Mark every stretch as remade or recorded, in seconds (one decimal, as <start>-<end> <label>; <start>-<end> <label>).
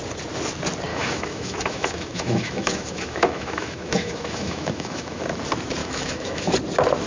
0.0-0.9 recorded; 0.9-5.2 remade; 5.2-5.8 recorded; 5.8-6.5 remade; 6.5-7.1 recorded